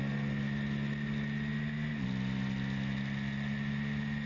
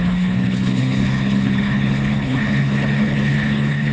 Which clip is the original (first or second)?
first